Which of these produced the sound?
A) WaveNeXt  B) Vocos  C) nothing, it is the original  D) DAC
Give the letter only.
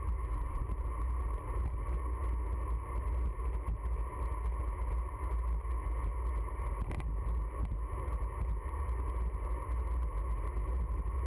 C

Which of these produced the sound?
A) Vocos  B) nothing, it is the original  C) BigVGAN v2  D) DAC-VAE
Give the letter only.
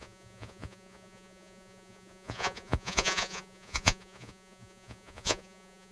A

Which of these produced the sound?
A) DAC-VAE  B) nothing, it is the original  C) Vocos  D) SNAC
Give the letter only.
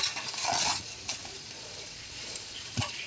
C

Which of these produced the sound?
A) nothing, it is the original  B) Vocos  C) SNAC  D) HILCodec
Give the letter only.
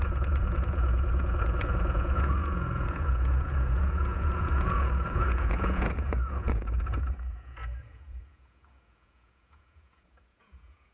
B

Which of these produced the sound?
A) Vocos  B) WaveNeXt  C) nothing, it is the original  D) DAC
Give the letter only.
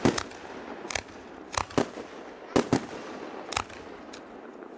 C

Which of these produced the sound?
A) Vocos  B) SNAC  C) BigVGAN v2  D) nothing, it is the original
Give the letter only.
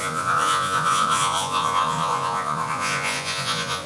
A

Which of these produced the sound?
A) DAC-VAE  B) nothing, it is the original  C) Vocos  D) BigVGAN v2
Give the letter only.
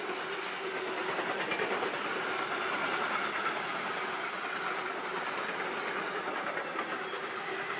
B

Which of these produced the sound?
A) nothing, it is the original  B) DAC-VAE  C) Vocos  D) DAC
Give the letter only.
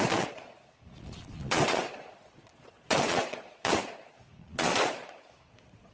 C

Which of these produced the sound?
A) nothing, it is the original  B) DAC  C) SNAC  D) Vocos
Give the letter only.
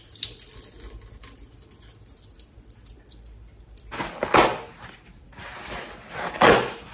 A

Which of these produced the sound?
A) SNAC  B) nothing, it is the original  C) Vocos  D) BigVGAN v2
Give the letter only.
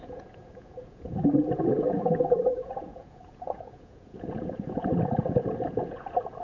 C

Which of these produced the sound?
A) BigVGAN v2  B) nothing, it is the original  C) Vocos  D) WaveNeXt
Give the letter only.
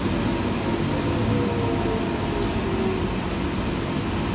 B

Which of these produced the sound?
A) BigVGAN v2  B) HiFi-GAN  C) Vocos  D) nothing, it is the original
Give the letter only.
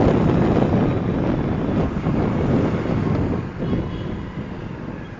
D